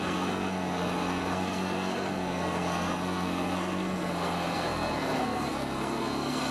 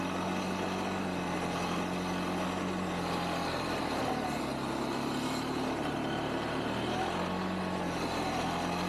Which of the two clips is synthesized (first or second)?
first